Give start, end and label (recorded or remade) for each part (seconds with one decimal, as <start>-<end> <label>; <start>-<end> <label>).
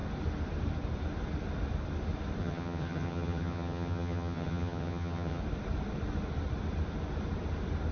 0.0-2.4 recorded; 2.4-5.4 remade; 5.4-7.9 recorded